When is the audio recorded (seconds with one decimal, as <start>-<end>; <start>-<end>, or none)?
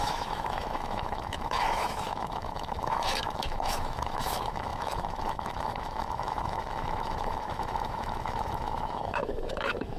none